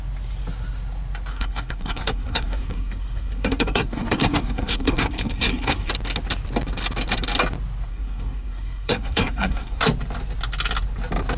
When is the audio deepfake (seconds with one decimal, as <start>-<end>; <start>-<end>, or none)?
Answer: 1.3-5.9; 7.9-9.8